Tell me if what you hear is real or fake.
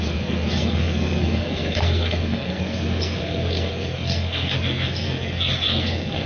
fake